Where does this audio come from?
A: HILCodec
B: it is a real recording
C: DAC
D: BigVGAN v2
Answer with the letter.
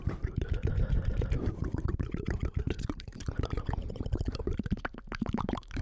D